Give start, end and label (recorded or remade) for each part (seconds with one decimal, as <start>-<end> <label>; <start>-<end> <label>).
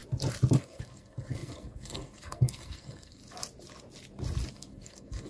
0.0-0.6 recorded; 0.6-3.2 remade; 3.2-4.5 recorded; 4.5-5.3 remade